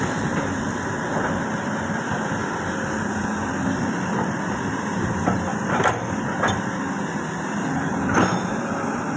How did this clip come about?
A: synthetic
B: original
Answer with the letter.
B